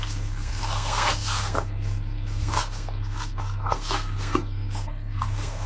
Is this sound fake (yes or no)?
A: yes